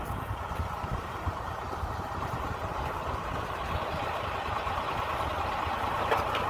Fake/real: fake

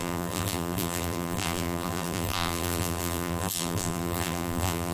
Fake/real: fake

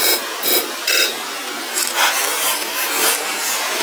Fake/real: fake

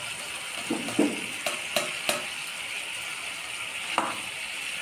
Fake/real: real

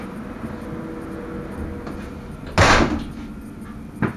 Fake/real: real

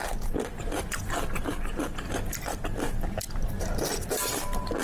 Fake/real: fake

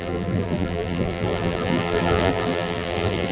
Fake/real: fake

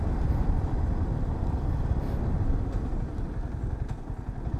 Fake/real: real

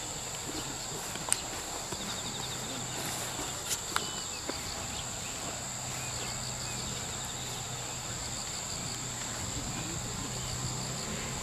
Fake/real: real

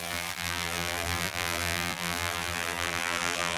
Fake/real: fake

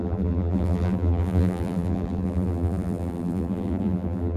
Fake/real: fake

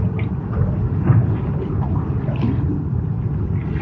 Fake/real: fake